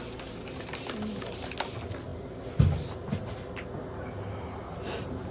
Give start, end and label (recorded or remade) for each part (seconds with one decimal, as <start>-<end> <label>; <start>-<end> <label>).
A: 0.0-5.3 recorded